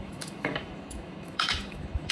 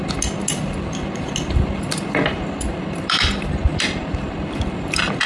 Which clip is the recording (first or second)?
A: second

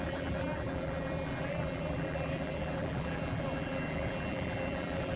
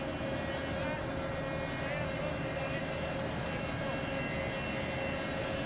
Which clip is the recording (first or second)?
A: second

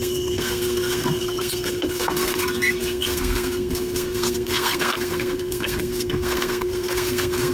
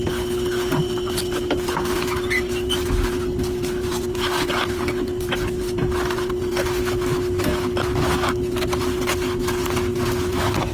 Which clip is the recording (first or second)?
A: second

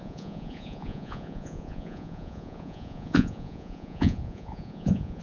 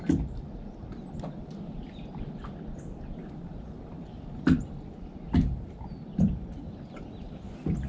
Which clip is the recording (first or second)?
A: second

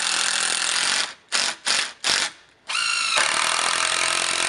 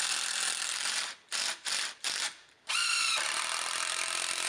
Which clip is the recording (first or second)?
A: first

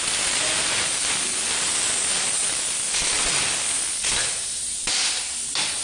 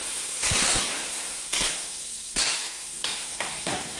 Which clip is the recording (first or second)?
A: first